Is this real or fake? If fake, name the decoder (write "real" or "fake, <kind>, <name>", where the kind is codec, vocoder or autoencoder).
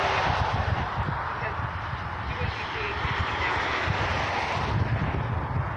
real